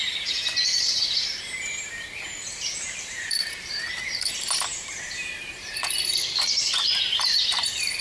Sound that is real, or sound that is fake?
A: fake